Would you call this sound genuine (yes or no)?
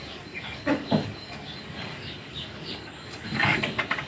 no